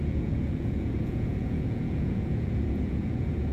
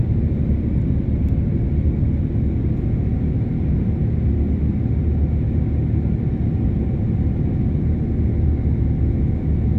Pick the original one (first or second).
second